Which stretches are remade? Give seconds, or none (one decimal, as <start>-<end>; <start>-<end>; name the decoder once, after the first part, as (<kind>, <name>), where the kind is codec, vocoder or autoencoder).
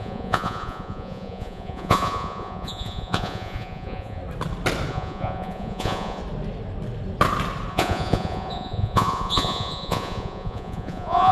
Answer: 0.0-4.2 (vocoder, Vocos); 4.9-6.2; 7.7-11.3